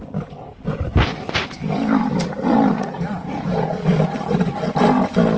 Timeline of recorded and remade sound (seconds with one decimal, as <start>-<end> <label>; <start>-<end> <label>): 0.0-2.7 recorded; 2.7-3.3 remade; 3.3-5.4 recorded